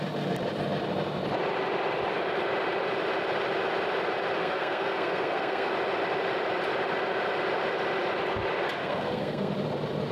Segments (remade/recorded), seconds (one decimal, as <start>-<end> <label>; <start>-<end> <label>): 0.0-4.4 recorded; 4.4-5.7 remade; 5.7-8.8 recorded; 8.8-9.5 remade; 9.5-10.1 recorded